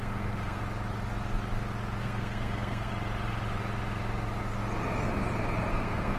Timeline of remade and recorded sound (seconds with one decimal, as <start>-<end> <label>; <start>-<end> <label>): 0.0-0.6 remade; 0.6-2.0 recorded; 2.0-2.9 remade; 2.9-5.7 recorded; 5.7-6.2 remade